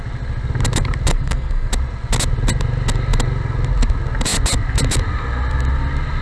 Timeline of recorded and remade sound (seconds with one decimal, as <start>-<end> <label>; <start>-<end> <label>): 0.0-1.1 recorded; 1.1-1.7 remade; 1.7-6.2 recorded